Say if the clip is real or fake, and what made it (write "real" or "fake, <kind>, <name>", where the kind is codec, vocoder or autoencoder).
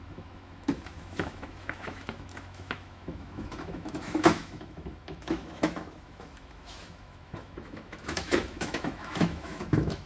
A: fake, autoencoder, DAC-VAE